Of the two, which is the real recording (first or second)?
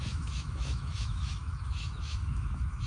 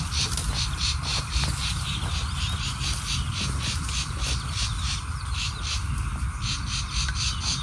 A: second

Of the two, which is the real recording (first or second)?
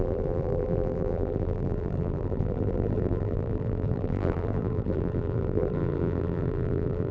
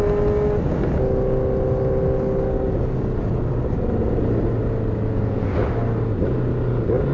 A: second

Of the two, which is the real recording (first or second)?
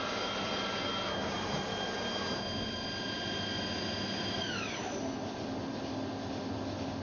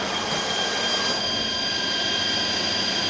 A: first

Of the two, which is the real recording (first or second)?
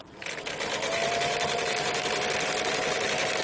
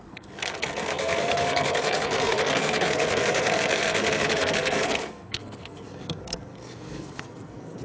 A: first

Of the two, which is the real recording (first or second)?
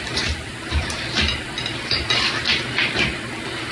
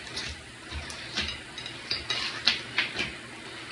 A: second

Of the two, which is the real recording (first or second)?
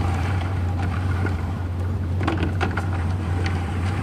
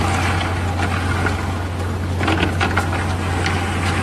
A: second